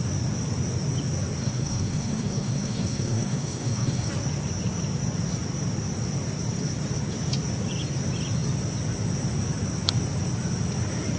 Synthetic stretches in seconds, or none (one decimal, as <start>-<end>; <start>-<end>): 1.4-4.1